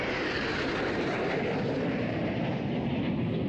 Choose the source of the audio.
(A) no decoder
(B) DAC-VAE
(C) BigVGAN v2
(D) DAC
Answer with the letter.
C